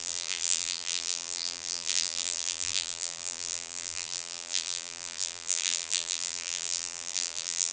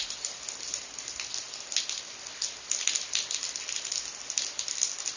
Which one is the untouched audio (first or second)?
second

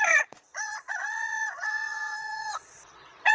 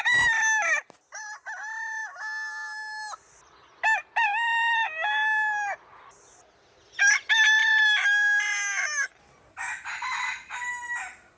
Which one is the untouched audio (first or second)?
second